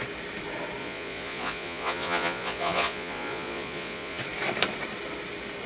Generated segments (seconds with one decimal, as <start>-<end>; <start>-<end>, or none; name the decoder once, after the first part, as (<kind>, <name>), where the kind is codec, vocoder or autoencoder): 0.8-4.2 (vocoder, Vocos)